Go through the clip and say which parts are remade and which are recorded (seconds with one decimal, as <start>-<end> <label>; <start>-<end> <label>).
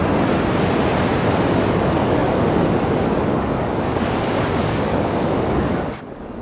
0.0-1.4 recorded; 1.4-6.4 remade